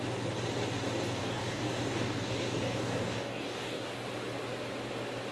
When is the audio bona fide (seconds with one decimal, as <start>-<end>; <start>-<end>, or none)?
0.0-1.2; 3.9-5.3